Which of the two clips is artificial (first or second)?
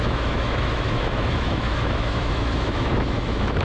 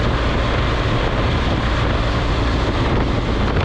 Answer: first